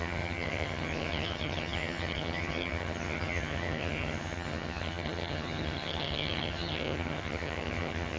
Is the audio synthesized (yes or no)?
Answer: yes